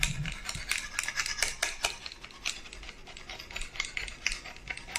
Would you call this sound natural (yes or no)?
yes